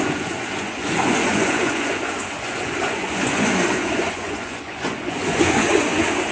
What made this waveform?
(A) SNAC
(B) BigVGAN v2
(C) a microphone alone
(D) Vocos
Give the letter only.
D